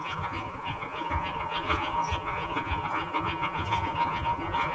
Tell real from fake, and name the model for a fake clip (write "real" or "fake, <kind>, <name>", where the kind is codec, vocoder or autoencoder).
fake, vocoder, Vocos